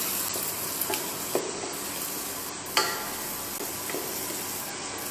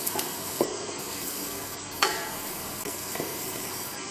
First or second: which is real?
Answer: first